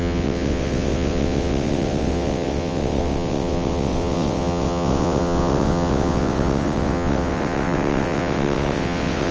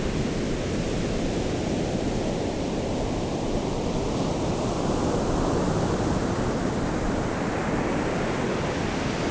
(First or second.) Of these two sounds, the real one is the second